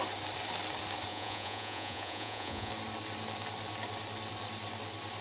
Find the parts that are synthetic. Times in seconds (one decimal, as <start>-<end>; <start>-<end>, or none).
1.1-2.7